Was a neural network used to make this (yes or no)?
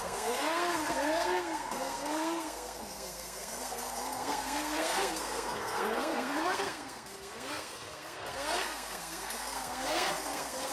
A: yes